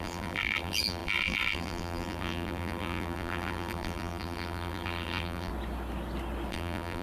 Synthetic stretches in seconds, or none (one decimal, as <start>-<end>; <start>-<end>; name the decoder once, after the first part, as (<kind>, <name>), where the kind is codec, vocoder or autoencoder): 0.0-5.5 (vocoder, BigVGAN v2); 6.5-7.0